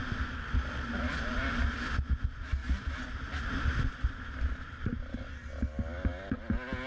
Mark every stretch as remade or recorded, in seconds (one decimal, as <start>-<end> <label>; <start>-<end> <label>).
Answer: 0.0-6.9 recorded